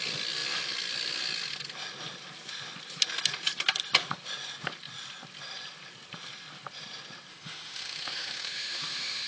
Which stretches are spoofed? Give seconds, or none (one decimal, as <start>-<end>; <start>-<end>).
7.3-9.3

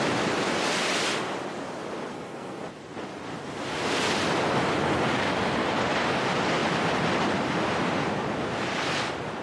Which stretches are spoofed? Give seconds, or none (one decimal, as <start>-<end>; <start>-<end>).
2.1-2.6

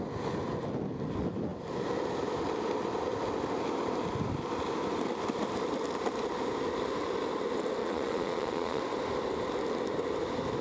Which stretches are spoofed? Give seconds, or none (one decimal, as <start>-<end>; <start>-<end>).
7.8-8.8

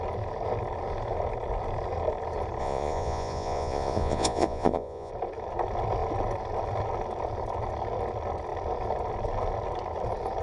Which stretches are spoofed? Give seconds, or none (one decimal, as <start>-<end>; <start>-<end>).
2.6-5.1

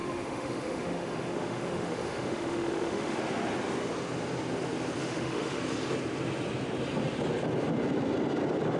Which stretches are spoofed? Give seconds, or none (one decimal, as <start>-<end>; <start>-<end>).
0.0-3.2; 5.0-5.6

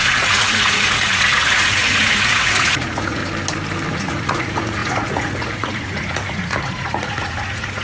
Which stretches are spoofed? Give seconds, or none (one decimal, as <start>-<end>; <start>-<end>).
0.0-3.2; 3.9-7.8